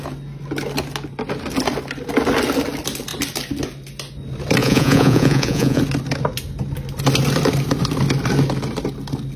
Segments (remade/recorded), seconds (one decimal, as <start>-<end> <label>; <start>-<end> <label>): 0.0-4.6 recorded; 4.6-5.8 remade; 5.8-9.4 recorded